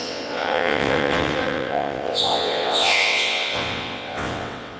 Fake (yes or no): yes